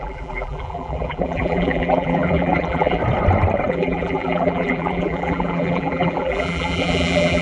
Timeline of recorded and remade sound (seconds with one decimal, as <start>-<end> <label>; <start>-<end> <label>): 0.0-3.0 remade; 3.0-3.7 recorded; 3.7-7.4 remade